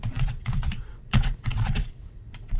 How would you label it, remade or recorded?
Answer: remade